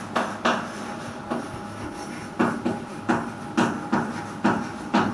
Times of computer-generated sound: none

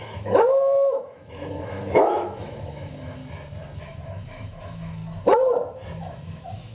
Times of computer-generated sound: 0.0-3.2 (autoencoder, DAC-VAE); 3.8-5.0; 6.0-6.7

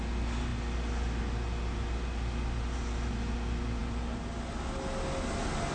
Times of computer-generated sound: none

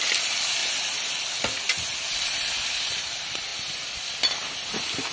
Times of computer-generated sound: none

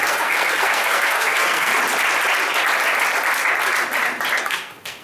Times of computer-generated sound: 0.0-1.7 (codec, SNAC); 4.4-5.0

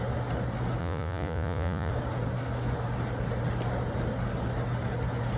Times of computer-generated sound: 0.8-1.9 (vocoder, Vocos)